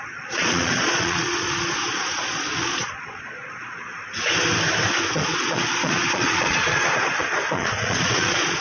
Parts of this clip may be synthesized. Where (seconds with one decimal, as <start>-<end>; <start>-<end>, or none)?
0.0-3.9; 5.1-8.6